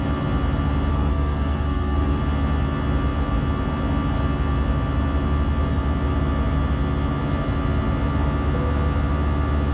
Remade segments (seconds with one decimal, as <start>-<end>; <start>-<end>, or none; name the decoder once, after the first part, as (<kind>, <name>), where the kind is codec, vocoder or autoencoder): 0.9-2.2 (codec, SNAC)